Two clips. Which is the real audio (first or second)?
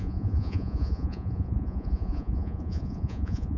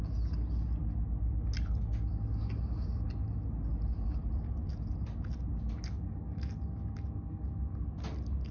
second